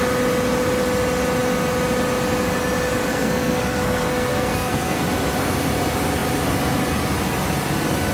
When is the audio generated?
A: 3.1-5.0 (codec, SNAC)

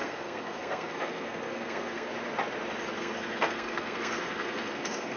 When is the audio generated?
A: 0.0-2.1 (codec, SNAC); 3.0-5.2

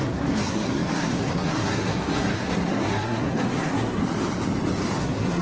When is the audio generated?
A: 0.0-4.0 (codec, SNAC); 5.0-5.4

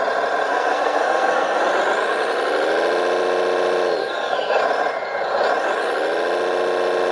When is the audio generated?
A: 0.4-1.6 (codec, SNAC); 4.0-4.6

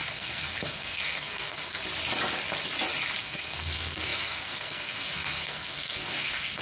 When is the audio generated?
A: 0.0-1.8 (codec, SNAC); 3.2-6.6

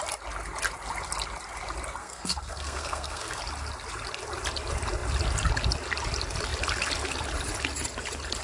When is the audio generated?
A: 2.0-3.4 (codec, SNAC)